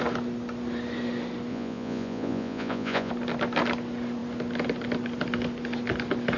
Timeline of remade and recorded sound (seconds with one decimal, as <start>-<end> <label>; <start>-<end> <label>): 0.0-1.5 recorded; 1.5-3.1 remade; 3.1-6.4 recorded